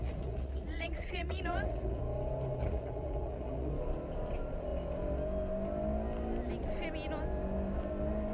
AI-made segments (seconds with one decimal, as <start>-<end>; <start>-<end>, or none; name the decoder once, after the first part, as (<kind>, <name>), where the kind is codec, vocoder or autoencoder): 0.0-2.0 (vocoder, Vocos); 2.6-3.7